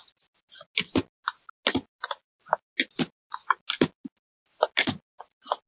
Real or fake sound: real